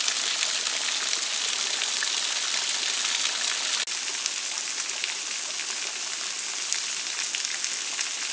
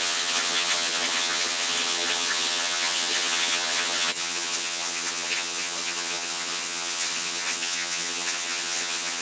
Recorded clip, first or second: first